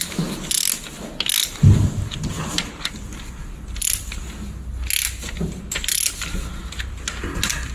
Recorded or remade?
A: recorded